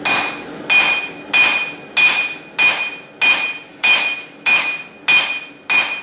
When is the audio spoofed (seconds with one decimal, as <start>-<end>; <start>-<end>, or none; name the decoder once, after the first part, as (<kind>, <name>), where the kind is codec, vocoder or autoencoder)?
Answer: 3.7-4.8 (autoencoder, DAC-VAE)